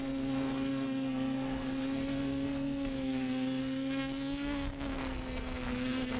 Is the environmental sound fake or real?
fake